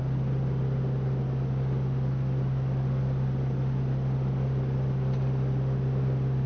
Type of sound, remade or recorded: recorded